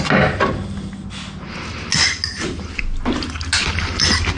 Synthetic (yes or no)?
no